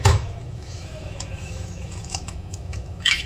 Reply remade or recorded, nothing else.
remade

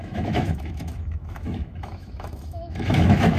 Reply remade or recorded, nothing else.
remade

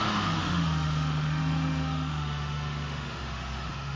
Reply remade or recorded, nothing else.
remade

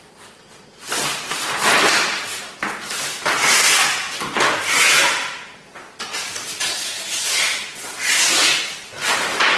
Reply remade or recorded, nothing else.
recorded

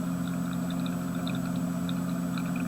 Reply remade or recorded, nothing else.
recorded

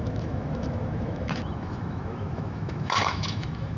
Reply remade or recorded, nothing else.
remade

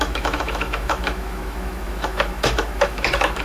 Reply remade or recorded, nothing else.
remade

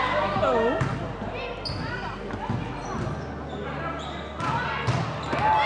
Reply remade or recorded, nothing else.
recorded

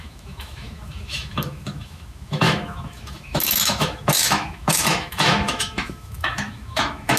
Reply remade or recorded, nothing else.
remade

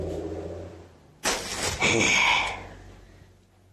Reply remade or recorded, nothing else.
recorded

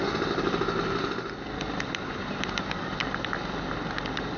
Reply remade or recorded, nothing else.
recorded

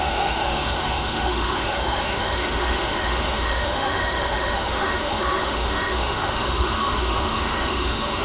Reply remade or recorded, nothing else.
remade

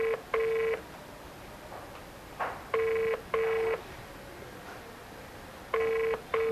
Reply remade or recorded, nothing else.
recorded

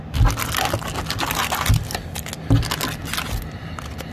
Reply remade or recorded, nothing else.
recorded